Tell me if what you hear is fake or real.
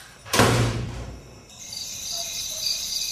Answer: fake